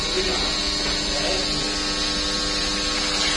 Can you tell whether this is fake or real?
real